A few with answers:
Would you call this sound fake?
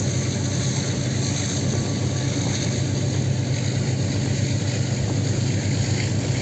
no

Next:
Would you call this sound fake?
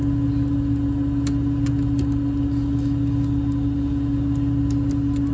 no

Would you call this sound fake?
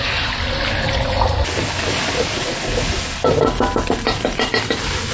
no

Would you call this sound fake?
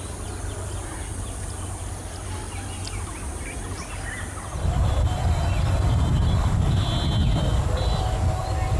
no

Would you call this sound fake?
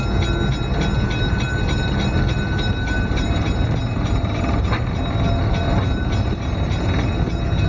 no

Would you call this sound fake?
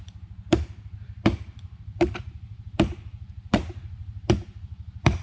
yes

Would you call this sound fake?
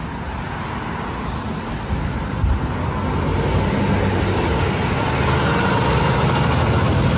no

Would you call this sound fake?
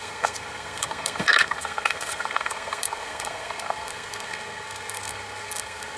yes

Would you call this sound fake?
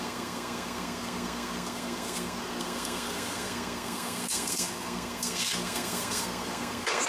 yes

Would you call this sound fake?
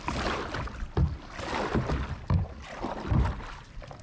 no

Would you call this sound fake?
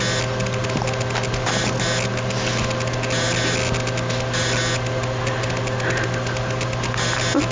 no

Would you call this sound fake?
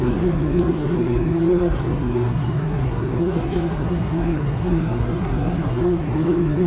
yes